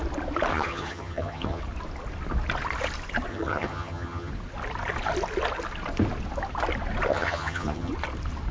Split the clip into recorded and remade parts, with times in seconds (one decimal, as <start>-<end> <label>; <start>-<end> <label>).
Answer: 0.0-0.5 recorded; 0.5-1.6 remade; 1.6-3.3 recorded; 3.3-4.3 remade; 4.3-7.1 recorded; 7.1-7.9 remade; 7.9-8.5 recorded